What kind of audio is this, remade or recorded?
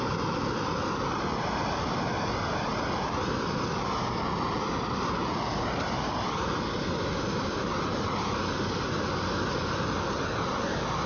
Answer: recorded